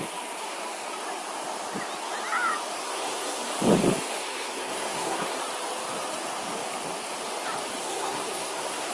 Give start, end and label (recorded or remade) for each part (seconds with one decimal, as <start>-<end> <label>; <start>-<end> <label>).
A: 0.0-2.8 recorded; 2.8-3.5 remade; 3.5-4.2 recorded; 4.2-5.4 remade; 5.4-7.8 recorded; 7.8-8.9 remade